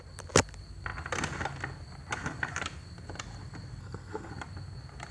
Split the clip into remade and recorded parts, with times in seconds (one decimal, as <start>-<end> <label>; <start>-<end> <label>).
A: 0.0-3.8 recorded; 3.8-4.3 remade; 4.3-5.1 recorded